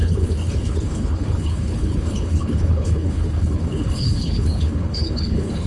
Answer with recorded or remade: remade